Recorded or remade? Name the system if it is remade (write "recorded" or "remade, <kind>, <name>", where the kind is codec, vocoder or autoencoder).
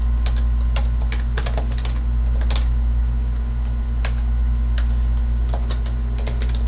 recorded